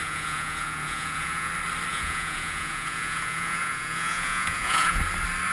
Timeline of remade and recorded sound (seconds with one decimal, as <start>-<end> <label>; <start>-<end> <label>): 0.0-1.5 remade; 1.5-1.9 recorded; 1.9-5.0 remade; 5.0-5.5 recorded